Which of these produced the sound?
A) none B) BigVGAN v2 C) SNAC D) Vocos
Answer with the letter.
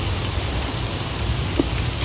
A